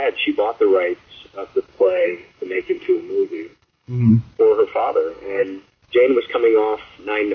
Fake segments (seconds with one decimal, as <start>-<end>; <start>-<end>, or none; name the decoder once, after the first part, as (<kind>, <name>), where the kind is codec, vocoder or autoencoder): 1.7-4.1 (codec, SNAC); 5.1-5.8